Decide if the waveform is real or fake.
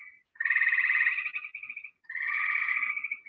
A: real